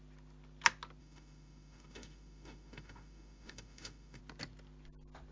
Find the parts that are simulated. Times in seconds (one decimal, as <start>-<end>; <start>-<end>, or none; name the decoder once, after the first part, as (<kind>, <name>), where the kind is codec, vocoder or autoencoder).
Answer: 1.0-4.2 (autoencoder, DAC-VAE)